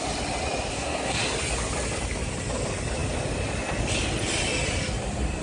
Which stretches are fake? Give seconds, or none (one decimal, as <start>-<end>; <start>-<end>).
0.7-1.2